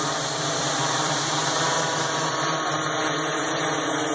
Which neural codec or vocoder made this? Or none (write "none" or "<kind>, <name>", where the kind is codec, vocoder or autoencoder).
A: vocoder, BigVGAN v2